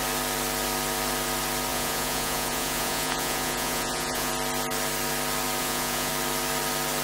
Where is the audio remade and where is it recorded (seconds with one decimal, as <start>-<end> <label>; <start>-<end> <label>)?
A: 0.0-1.7 recorded; 1.7-4.3 remade; 4.3-5.6 recorded; 5.6-6.1 remade; 6.1-7.0 recorded